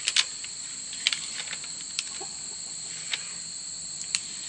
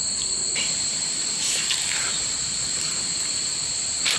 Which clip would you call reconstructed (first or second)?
second